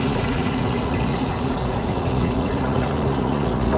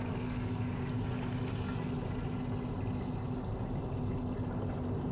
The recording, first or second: second